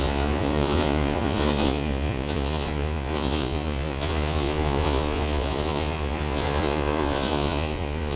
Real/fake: fake